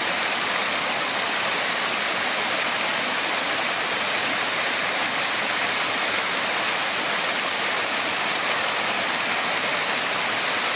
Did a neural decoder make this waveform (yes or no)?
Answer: no